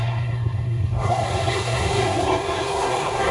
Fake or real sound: fake